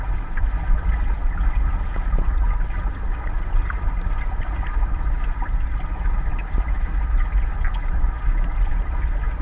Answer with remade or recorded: recorded